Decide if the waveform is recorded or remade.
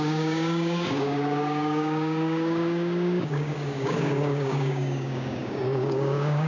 remade